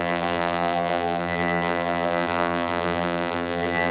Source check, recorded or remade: remade